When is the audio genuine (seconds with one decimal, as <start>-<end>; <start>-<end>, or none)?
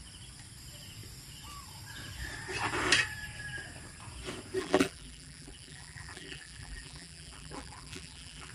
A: 0.0-4.6